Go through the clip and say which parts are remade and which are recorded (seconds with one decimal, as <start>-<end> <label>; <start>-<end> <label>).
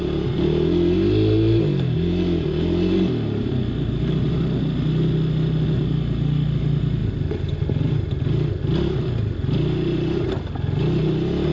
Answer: 0.0-11.5 recorded